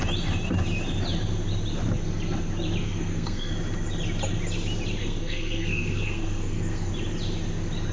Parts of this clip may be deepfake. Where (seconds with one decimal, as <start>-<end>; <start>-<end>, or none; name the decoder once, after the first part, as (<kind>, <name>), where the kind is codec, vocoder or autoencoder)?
2.8-3.5 (codec, SNAC); 5.0-6.9